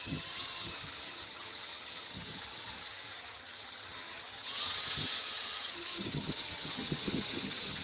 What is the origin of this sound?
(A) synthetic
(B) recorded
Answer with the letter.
A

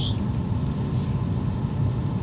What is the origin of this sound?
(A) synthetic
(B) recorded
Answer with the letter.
B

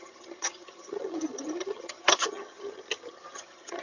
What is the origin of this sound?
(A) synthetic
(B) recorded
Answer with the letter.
A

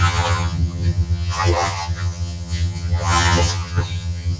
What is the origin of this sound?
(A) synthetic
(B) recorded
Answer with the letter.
A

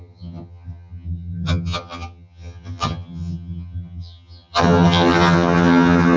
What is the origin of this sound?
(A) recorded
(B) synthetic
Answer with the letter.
B